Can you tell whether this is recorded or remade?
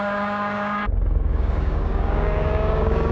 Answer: remade